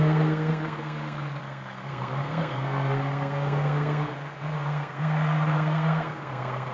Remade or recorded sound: remade